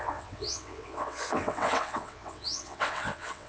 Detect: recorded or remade remade